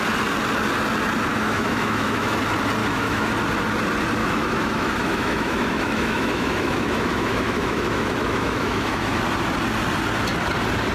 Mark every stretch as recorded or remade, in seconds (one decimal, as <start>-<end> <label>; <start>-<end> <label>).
0.0-1.3 recorded; 1.3-2.4 remade; 2.4-2.8 recorded; 2.8-3.3 remade; 3.3-4.2 recorded; 4.2-9.2 remade; 9.2-10.9 recorded